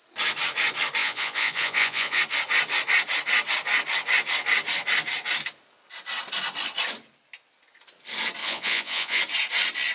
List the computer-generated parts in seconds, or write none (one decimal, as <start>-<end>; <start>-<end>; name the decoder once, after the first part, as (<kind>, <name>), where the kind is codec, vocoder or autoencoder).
1.0-2.2 (vocoder, Vocos); 8.4-9.2